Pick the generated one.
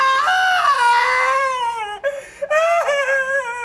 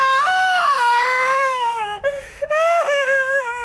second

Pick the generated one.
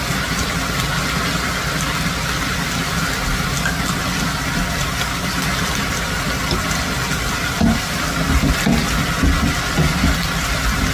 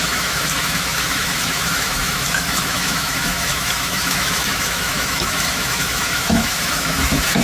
second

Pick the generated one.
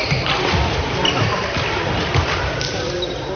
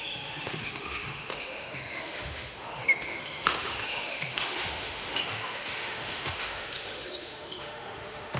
second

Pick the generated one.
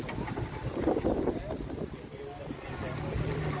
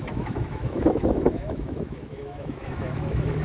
second